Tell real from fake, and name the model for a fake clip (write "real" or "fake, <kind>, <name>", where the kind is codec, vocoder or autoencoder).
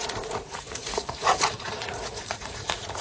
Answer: fake, vocoder, Vocos